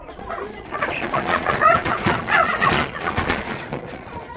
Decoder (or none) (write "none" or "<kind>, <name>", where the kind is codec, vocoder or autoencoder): vocoder, Vocos